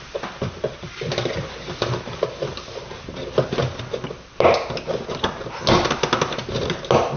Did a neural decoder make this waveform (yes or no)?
no